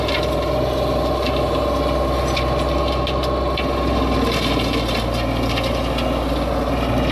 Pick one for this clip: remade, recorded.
recorded